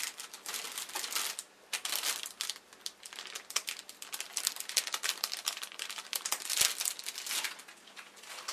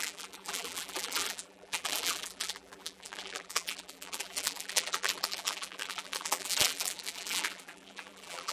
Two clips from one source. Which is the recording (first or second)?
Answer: first